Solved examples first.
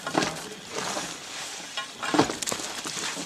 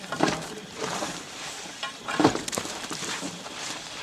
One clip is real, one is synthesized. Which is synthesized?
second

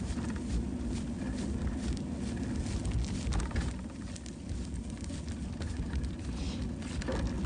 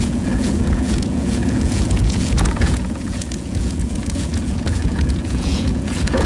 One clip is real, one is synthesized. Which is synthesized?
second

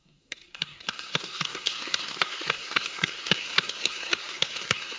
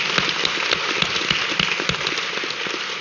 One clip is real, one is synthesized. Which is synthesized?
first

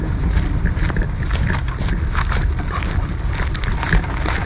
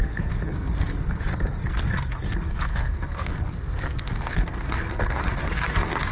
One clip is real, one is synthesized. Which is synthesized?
second